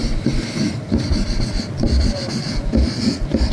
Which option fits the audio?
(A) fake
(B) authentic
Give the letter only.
B